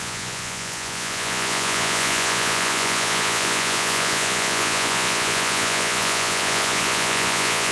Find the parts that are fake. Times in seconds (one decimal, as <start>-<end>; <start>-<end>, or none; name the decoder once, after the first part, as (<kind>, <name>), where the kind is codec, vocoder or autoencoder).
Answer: 0.0-7.7 (vocoder, Vocos)